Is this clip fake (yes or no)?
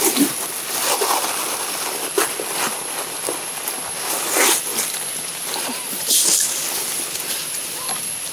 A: no